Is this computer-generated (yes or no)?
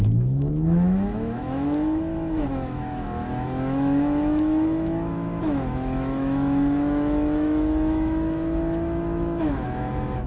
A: yes